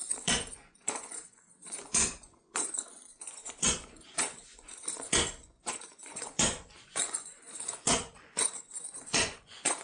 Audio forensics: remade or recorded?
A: remade